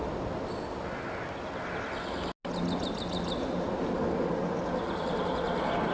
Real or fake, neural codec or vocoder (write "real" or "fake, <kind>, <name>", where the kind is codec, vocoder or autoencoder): real